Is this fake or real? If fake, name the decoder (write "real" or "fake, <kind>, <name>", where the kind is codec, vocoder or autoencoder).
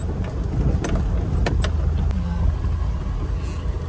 real